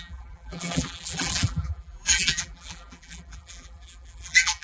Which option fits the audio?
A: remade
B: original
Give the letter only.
A